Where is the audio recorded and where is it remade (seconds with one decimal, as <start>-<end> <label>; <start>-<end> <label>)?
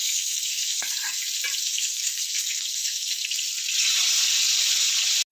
0.0-1.2 remade; 1.2-1.6 recorded; 1.6-3.3 remade; 3.3-5.3 recorded